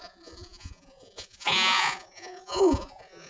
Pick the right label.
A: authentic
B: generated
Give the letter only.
B